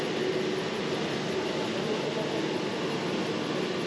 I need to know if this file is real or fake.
real